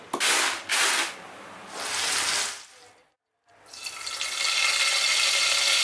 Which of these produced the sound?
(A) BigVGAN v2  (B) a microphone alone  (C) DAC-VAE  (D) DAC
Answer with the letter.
B